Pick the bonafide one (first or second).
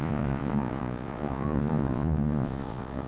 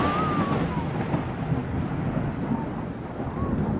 second